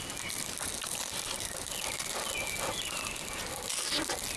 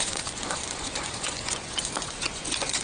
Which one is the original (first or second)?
first